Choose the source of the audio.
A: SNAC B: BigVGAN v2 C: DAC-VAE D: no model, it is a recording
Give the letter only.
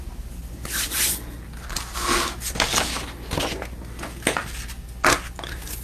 D